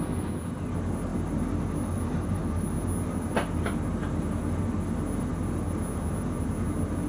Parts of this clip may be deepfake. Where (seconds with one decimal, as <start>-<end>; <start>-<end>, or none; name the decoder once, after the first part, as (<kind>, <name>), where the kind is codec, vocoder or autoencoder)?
none